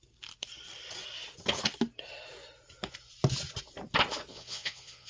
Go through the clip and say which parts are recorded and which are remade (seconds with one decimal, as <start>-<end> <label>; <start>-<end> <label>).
0.0-4.3 recorded; 4.3-5.1 remade